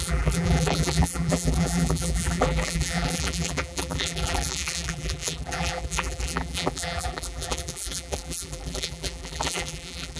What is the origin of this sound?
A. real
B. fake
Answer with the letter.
B